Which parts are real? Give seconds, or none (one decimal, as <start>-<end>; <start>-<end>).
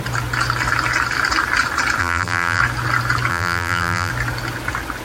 0.0-2.0; 2.6-3.3; 4.1-5.0